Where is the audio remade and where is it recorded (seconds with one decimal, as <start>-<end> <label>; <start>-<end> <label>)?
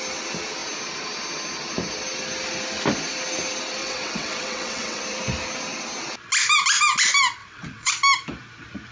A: 0.0-3.8 recorded; 3.8-5.0 remade; 5.0-7.4 recorded; 7.4-7.9 remade; 7.9-8.9 recorded